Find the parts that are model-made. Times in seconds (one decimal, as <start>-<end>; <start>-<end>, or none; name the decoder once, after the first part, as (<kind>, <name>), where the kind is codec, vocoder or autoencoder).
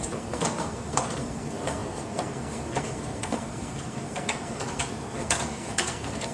0.0-6.3 (codec, SNAC)